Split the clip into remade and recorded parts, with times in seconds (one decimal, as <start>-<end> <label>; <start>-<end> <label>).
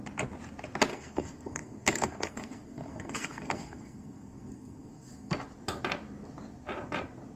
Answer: 0.0-0.9 recorded; 0.9-5.3 remade; 5.3-7.4 recorded